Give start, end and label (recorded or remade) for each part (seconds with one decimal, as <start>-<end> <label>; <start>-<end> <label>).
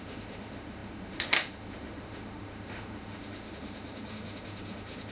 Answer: 0.0-5.1 remade